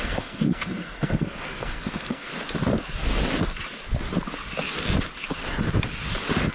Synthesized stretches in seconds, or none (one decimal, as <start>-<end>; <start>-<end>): 0.0-2.3